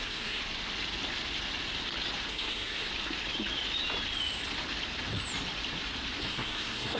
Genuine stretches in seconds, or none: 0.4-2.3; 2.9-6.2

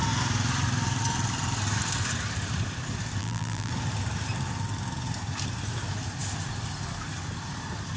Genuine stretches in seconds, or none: 0.0-3.2; 3.7-8.0

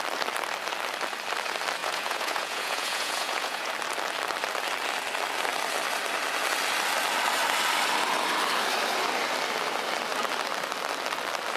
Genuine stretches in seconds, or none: 0.0-1.8; 3.7-11.6